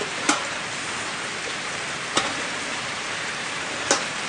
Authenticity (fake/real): fake